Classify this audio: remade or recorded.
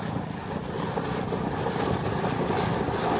recorded